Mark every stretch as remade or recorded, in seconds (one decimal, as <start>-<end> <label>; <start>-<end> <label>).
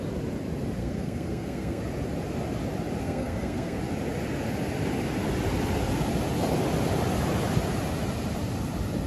0.0-0.8 recorded; 0.8-1.8 remade; 1.8-3.0 recorded; 3.0-3.8 remade; 3.8-9.1 recorded